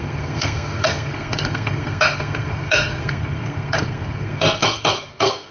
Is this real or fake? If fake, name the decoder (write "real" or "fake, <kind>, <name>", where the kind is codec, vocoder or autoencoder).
fake, codec, SNAC